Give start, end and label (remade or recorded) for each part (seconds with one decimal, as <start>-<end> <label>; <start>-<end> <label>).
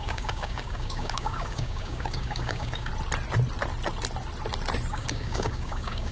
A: 0.0-2.9 remade; 2.9-4.9 recorded; 4.9-6.1 remade